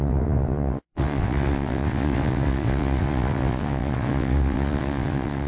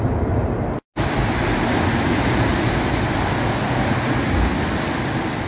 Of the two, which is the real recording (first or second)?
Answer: second